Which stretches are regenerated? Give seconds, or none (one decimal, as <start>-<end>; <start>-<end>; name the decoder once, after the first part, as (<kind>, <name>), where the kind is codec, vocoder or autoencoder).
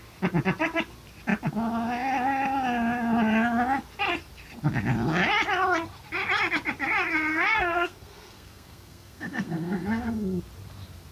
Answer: 7.3-10.4 (codec, SNAC)